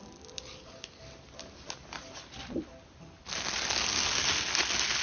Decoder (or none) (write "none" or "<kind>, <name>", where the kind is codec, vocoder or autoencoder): none